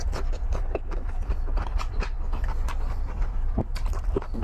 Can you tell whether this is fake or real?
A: fake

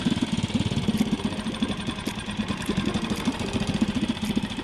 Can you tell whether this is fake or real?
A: fake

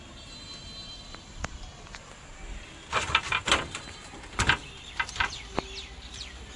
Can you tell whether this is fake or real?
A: fake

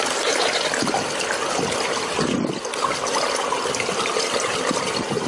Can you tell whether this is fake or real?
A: real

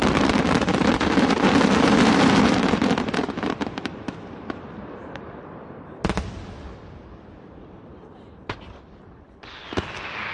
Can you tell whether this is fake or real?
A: fake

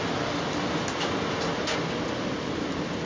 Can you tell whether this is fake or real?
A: real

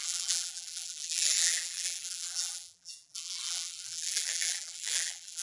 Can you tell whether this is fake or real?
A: fake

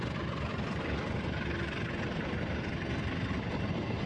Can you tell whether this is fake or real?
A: real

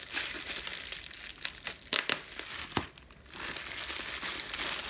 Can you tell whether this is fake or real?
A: real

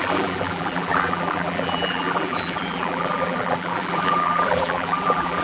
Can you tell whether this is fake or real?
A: fake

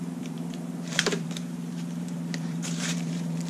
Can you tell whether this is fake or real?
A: fake